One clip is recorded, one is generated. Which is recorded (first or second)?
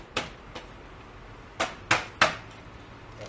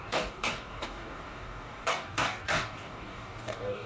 first